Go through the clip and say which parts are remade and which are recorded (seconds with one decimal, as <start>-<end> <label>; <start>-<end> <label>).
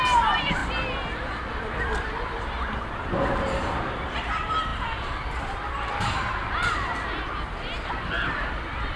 0.0-0.6 remade; 0.6-1.5 recorded; 1.5-9.0 remade